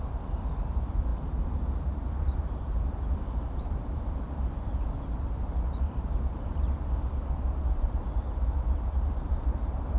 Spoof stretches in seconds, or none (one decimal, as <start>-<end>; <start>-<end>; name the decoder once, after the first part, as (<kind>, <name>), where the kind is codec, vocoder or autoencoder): none